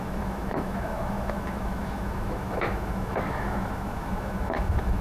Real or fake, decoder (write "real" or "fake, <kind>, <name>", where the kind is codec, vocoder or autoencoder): fake, autoencoder, DAC-VAE